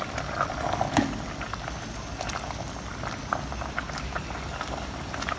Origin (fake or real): real